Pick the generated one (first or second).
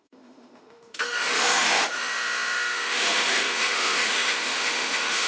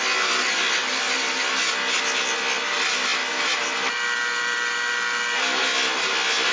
first